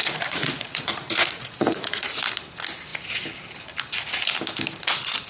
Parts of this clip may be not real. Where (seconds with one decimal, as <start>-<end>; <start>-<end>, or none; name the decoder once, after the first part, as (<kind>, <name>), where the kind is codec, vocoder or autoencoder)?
0.0-2.2 (vocoder, Vocos)

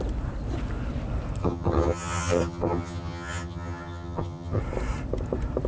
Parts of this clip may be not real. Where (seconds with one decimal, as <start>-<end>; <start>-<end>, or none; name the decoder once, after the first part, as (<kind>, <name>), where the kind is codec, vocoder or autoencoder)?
1.4-4.6 (vocoder, HiFi-GAN)

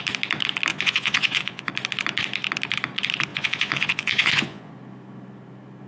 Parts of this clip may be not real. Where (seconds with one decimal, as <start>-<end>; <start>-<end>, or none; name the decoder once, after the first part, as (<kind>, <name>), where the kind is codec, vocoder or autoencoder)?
0.7-1.7 (vocoder, Vocos); 3.3-4.7

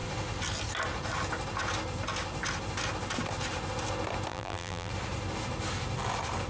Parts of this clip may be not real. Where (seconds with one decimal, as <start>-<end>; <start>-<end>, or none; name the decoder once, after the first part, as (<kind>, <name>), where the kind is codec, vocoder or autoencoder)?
4.3-4.9 (vocoder, BigVGAN v2)

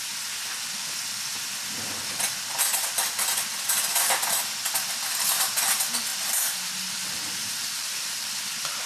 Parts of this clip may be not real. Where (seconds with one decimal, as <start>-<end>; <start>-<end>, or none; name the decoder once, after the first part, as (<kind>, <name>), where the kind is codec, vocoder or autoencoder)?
6.1-6.7 (vocoder, BigVGAN v2); 7.4-8.3

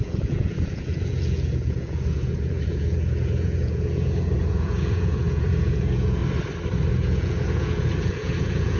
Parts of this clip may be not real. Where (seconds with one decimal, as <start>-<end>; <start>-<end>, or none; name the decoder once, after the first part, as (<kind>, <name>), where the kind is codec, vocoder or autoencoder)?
0.0-6.2 (vocoder, Vocos); 6.9-8.8

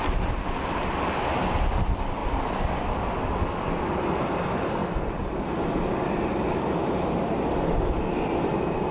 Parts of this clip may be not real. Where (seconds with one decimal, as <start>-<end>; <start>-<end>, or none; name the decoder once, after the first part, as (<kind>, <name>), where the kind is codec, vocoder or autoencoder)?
none

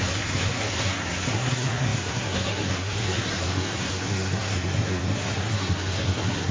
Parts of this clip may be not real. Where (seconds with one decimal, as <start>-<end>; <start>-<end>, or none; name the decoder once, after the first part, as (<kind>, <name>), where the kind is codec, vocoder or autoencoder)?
0.0-6.5 (codec, SNAC)